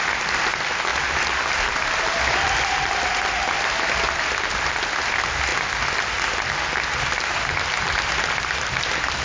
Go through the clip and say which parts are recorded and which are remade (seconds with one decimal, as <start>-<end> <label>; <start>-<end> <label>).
0.0-9.2 recorded